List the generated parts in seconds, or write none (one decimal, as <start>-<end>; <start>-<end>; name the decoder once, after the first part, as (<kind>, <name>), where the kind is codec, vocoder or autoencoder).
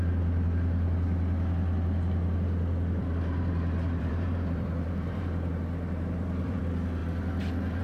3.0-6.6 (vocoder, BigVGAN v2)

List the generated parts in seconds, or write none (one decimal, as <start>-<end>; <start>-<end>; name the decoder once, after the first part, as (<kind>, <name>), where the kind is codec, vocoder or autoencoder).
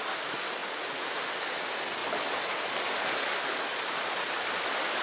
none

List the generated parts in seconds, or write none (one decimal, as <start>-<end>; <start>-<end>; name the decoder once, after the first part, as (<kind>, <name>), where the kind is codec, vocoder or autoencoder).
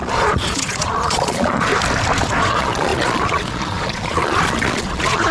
0.0-1.7 (vocoder, Vocos); 2.4-5.3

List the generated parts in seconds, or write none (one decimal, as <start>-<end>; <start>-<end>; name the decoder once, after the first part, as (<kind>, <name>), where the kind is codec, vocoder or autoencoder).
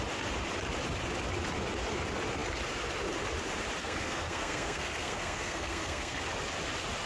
3.8-6.2 (codec, SNAC)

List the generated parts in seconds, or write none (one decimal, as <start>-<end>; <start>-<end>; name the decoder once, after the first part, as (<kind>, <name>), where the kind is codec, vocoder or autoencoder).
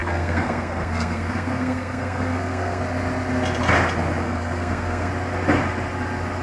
0.0-2.8 (codec, SNAC); 4.2-5.1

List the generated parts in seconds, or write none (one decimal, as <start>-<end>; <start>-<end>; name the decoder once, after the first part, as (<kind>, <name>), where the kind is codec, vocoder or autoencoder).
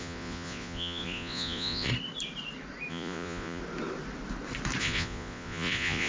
0.0-1.9 (vocoder, Vocos); 2.9-3.6; 4.8-6.1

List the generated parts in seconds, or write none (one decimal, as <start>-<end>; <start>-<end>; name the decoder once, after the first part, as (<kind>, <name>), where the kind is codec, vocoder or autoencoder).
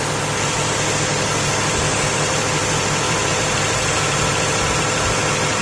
1.9-3.3 (vocoder, BigVGAN v2)